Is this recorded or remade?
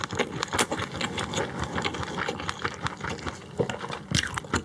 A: recorded